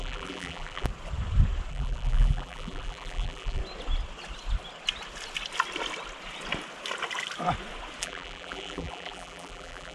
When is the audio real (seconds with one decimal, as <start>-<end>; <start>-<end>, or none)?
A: 0.9-1.7; 3.6-8.0